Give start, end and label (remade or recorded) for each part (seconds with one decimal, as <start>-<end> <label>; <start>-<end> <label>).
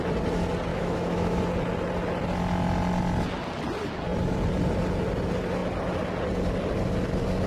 0.0-0.7 recorded; 0.7-1.4 remade; 1.4-7.5 recorded